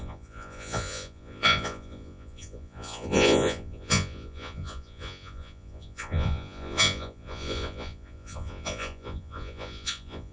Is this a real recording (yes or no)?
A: no